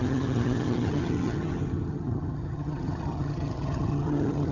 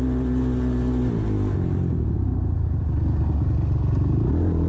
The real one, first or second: second